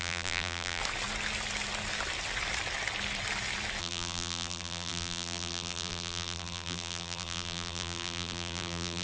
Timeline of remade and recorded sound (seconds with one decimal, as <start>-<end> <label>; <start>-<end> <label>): 0.0-0.8 remade; 0.8-3.8 recorded; 3.8-9.0 remade